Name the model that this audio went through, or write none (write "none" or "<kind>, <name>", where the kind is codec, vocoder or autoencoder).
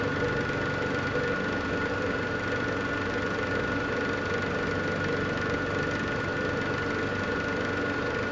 none